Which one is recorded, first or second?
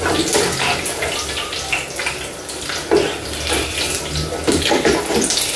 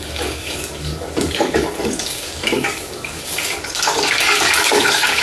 first